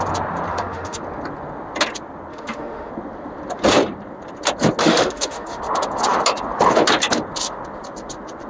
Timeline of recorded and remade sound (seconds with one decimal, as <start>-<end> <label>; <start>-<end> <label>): 0.0-0.5 recorded; 0.5-1.0 remade; 1.0-2.3 recorded; 2.3-2.9 remade; 2.9-4.8 recorded; 4.8-5.6 remade; 5.6-8.5 recorded